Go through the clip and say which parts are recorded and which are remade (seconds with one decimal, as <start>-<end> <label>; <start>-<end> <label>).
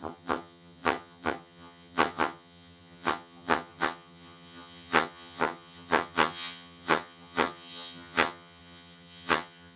0.0-9.8 remade